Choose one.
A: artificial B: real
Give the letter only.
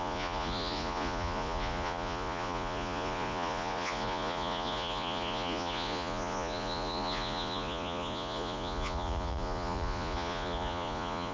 A